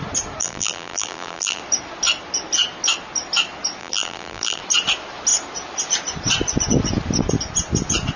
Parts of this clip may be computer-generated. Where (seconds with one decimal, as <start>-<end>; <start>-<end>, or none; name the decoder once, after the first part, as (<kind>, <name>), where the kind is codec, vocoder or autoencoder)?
0.4-1.6 (vocoder, BigVGAN v2); 3.8-4.6